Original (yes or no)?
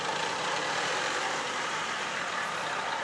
yes